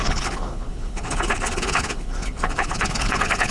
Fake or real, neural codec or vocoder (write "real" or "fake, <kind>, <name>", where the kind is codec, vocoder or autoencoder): fake, codec, HILCodec